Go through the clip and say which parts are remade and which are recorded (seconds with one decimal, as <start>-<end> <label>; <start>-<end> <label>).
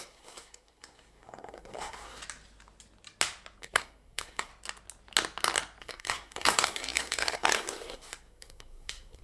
0.0-2.2 remade; 2.2-3.6 recorded; 3.6-4.5 remade; 4.5-5.8 recorded; 5.8-9.2 remade